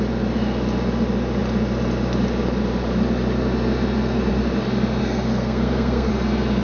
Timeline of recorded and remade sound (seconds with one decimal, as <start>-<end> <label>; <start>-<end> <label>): 0.0-5.0 recorded; 5.0-6.1 remade; 6.1-6.6 recorded